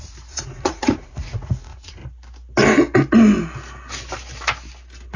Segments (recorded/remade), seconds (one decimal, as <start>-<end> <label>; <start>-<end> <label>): 0.0-2.0 remade; 2.0-5.2 recorded